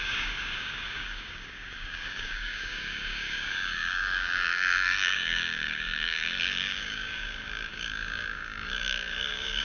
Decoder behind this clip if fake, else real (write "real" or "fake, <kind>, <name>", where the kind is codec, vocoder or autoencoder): fake, codec, DAC